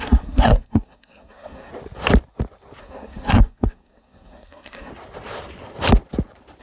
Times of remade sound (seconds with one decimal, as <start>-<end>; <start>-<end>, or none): 0.0-1.7; 2.8-4.9